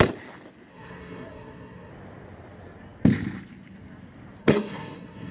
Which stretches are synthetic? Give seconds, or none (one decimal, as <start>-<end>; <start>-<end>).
0.7-1.9; 4.4-5.3

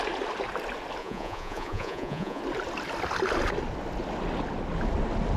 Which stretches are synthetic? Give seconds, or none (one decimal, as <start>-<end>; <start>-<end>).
1.0-2.4